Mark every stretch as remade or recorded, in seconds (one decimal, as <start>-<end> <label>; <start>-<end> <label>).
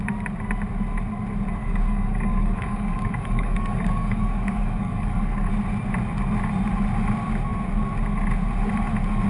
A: 0.0-1.6 recorded; 1.6-5.5 remade; 5.5-9.3 recorded